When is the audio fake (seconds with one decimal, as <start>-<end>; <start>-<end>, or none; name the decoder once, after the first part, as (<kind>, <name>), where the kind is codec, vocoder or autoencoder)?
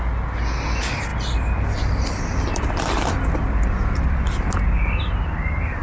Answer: 1.1-4.6 (vocoder, BigVGAN v2)